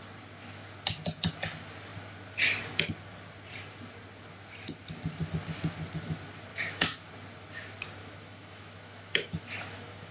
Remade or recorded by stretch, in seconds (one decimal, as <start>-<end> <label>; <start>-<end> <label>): 0.0-6.5 recorded; 6.5-7.1 remade; 7.1-8.0 recorded; 8.0-10.1 remade